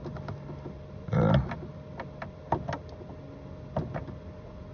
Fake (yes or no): no